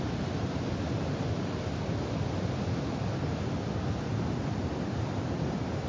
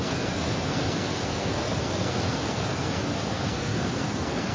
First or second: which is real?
first